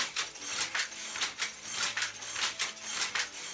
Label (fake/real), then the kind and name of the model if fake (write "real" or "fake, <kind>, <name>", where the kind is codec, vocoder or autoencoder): real